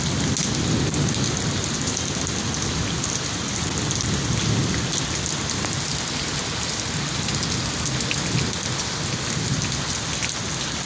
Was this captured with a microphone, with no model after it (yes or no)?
yes